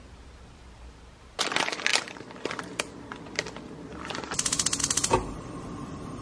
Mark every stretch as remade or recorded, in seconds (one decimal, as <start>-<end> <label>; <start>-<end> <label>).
0.0-6.2 recorded